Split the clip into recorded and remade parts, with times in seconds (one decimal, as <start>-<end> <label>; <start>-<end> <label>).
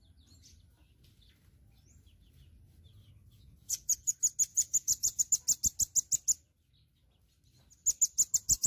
0.0-3.2 recorded; 3.2-4.1 remade; 4.1-4.5 recorded; 4.5-5.2 remade; 5.2-8.7 recorded